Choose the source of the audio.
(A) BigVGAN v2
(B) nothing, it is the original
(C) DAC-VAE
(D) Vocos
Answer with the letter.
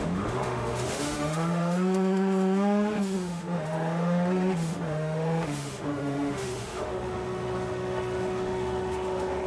C